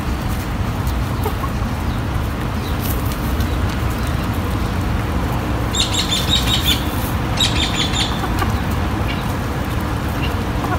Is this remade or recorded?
recorded